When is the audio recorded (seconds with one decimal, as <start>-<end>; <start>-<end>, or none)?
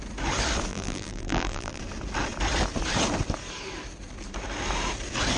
0.0-0.7; 1.8-5.4